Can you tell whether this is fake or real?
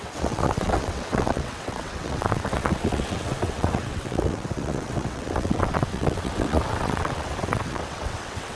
fake